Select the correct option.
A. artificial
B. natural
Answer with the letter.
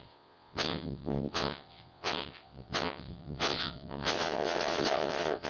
A